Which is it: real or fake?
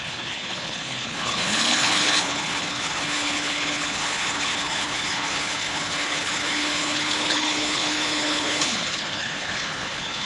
fake